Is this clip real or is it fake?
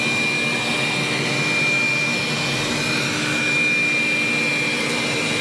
real